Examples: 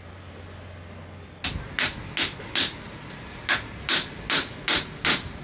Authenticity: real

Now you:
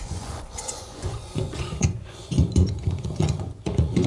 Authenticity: fake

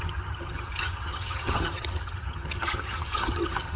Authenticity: fake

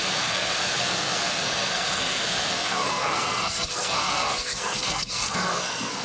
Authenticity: fake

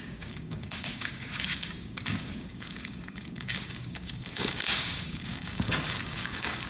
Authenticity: fake